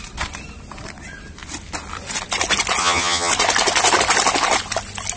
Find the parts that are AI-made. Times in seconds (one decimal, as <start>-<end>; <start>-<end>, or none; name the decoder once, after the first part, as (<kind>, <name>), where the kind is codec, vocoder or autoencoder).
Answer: 2.8-3.3 (vocoder, HiFi-GAN)